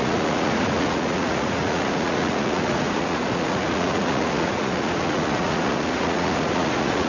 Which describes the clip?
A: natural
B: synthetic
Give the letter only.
B